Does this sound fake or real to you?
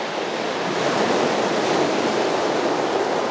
real